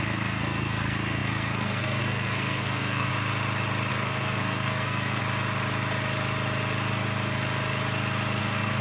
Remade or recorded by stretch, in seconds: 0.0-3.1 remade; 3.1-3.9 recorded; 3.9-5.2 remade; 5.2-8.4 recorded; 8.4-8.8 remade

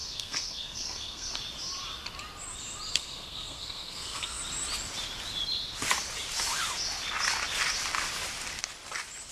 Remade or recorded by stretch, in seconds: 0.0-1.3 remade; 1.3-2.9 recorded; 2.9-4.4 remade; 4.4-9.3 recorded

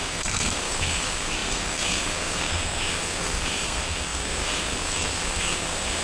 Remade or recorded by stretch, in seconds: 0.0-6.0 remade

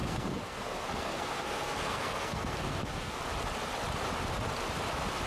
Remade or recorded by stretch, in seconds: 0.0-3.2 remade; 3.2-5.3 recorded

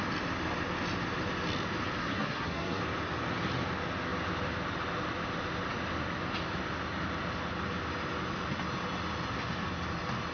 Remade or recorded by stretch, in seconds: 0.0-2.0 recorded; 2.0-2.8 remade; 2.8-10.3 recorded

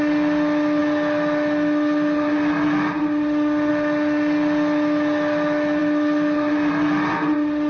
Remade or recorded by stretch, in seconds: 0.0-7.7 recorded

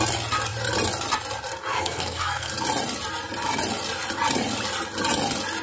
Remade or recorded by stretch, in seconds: 0.0-1.7 recorded; 1.7-2.5 remade; 2.5-5.6 recorded